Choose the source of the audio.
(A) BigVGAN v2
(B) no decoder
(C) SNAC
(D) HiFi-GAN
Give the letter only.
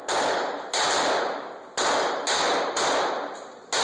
B